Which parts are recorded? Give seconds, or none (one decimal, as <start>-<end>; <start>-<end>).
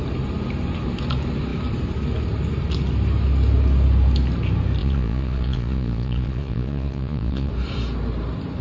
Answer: 0.0-4.8; 7.5-8.6